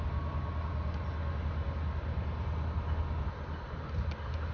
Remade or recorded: recorded